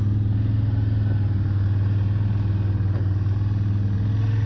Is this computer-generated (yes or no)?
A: no